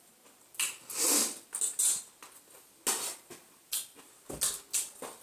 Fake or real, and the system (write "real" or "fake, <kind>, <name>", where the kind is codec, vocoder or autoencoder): real